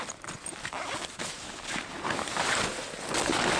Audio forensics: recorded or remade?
recorded